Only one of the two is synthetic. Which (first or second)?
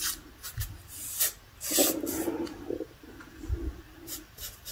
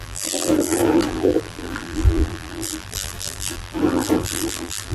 second